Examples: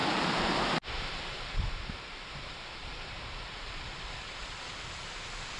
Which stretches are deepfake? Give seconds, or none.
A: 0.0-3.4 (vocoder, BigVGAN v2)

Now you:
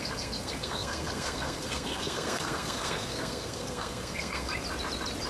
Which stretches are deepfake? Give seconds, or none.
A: 0.0-4.5 (codec, SNAC)

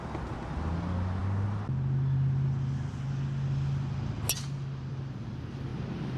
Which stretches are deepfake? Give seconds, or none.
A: none

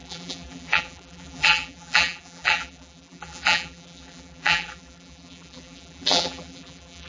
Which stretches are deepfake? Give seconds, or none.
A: 0.0-7.1 (vocoder, BigVGAN v2)

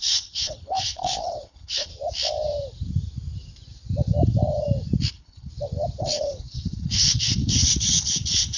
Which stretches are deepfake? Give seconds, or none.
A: 0.0-1.9 (codec, HILCodec); 5.1-5.5; 6.0-8.6

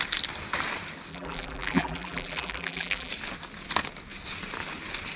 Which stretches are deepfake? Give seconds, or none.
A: 1.1-3.1 (vocoder, BigVGAN v2)

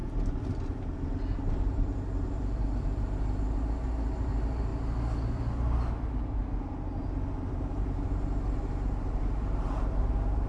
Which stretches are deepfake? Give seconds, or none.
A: 0.5-4.7 (vocoder, BigVGAN v2); 7.5-10.5

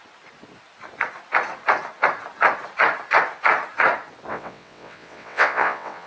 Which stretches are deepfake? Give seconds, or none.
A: 4.3-6.1 (vocoder, WaveNeXt)